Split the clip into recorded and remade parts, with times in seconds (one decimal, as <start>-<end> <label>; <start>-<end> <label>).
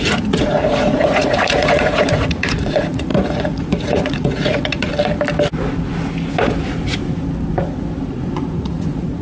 0.0-4.9 remade; 4.9-8.0 recorded; 8.0-9.2 remade